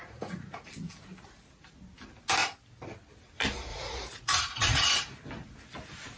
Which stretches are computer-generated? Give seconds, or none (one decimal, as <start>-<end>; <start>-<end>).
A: 0.0-0.7; 3.7-4.9